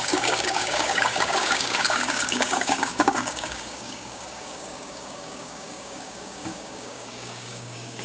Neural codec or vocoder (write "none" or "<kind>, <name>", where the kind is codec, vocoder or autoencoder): codec, DAC